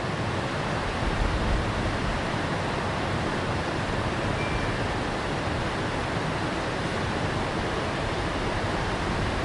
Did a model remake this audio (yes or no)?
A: no